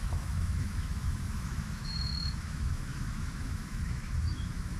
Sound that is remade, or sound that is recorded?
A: remade